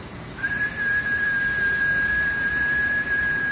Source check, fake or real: fake